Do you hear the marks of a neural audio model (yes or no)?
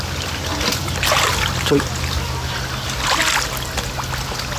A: no